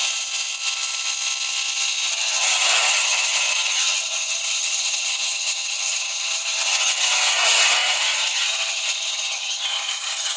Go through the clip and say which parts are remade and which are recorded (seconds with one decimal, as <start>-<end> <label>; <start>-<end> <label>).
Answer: 0.0-2.1 recorded; 2.1-10.4 remade